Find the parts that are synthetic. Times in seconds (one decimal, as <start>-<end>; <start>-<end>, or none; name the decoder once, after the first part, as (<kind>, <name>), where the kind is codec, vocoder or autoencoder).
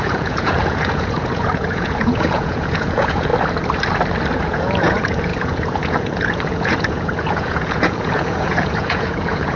0.0-3.3 (vocoder, Vocos); 4.3-9.6